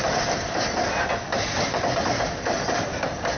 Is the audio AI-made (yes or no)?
no